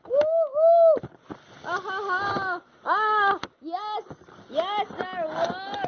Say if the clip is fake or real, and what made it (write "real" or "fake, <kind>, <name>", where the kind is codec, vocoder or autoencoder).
real